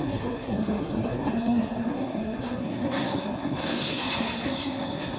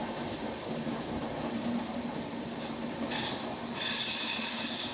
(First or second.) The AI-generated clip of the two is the first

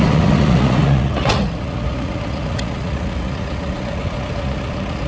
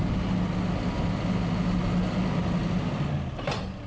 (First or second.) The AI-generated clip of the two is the first